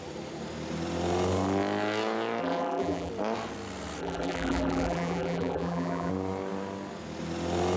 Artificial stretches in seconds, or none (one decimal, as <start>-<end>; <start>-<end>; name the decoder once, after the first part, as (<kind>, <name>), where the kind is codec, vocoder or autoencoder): 2.4-3.1 (vocoder, BigVGAN v2); 4.0-6.1